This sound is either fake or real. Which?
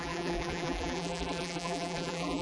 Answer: fake